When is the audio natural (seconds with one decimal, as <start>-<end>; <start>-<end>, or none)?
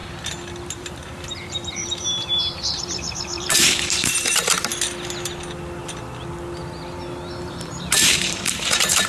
0.0-0.7; 4.7-7.4